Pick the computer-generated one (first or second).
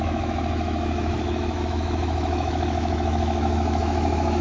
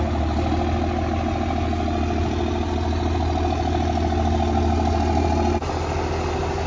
first